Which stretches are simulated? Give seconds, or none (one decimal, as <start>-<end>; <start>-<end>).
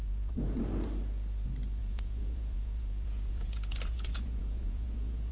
0.0-0.6; 1.8-5.3